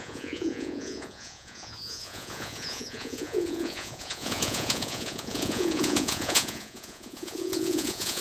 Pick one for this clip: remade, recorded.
remade